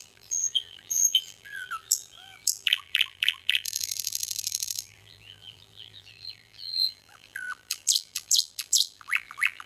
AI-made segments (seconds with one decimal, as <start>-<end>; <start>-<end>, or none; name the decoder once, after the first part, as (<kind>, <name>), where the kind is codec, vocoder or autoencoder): 0.0-9.7 (vocoder, BigVGAN v2)